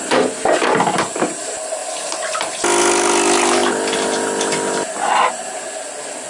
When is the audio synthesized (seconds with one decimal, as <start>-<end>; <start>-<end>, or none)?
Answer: none